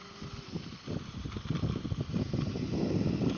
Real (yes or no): yes